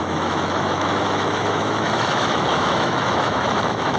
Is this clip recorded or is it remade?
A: remade